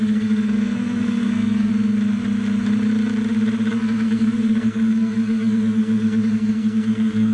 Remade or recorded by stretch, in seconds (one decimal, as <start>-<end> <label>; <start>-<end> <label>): 0.0-1.7 remade; 1.7-3.7 recorded; 3.7-7.3 remade